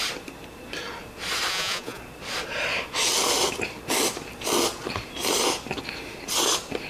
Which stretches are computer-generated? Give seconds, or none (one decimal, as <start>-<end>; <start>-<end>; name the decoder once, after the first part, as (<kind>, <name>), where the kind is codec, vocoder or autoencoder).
1.5-2.0 (vocoder, Vocos)

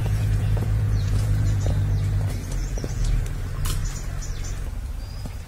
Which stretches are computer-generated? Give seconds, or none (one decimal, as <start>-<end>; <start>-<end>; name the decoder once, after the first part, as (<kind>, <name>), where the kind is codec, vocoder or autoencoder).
0.0-1.7 (vocoder, Vocos); 2.6-3.1

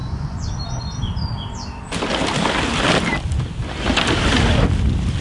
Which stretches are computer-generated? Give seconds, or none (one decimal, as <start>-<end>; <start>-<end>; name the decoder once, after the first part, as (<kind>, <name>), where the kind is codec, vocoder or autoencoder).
0.0-0.5 (vocoder, Vocos)

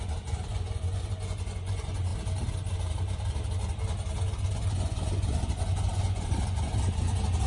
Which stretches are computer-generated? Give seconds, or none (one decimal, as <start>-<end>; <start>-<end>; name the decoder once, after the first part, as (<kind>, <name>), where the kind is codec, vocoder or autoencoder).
0.0-2.1 (vocoder, Vocos); 4.7-6.7

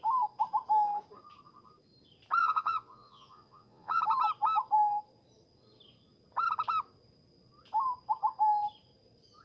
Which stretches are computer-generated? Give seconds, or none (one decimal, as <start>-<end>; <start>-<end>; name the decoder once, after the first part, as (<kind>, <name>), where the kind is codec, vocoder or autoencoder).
2.4-4.0 (vocoder, Vocos)